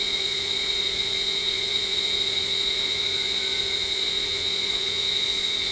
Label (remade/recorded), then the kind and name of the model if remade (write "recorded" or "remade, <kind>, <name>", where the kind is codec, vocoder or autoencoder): remade, vocoder, Vocos